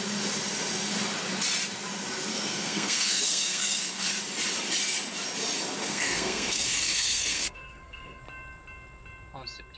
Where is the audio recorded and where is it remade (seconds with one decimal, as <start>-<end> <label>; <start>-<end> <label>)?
0.0-2.3 recorded; 2.3-4.1 remade; 4.1-5.8 recorded; 5.8-8.2 remade; 8.2-9.8 recorded